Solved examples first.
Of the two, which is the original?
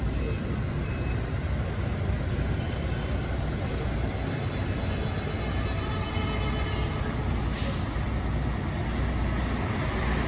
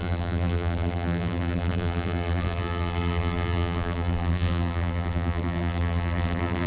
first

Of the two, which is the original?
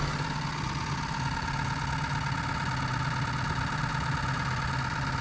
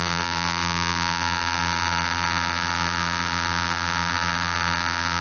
first